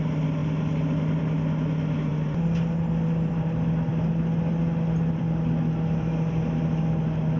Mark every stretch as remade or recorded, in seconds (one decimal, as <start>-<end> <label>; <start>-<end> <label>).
0.0-7.4 recorded